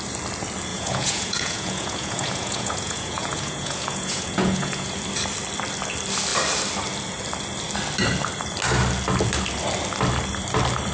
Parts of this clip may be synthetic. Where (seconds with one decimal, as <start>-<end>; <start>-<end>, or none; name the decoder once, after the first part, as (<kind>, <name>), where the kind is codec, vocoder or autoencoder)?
0.7-4.9 (vocoder, Vocos)